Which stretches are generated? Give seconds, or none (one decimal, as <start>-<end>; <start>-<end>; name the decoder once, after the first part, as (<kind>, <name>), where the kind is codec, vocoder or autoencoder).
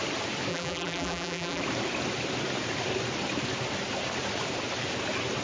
0.5-1.6 (vocoder, BigVGAN v2)